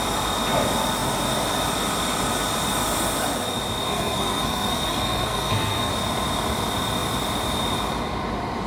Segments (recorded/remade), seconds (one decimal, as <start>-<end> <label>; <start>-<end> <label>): 0.0-3.9 recorded; 3.9-5.9 remade; 5.9-8.7 recorded